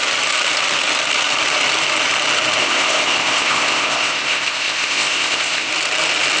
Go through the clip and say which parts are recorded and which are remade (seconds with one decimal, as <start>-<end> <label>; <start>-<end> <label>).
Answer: 0.0-2.6 recorded; 2.6-5.7 remade; 5.7-6.4 recorded